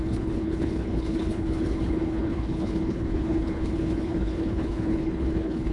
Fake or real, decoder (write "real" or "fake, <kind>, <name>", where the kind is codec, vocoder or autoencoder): fake, codec, HILCodec